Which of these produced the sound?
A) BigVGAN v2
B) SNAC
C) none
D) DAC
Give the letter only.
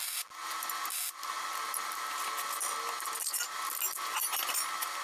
C